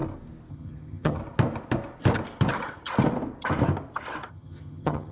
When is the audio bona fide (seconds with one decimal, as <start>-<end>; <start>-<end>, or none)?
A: 0.0-0.5; 1.2-4.3